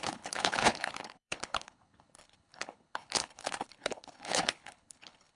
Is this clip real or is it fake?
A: fake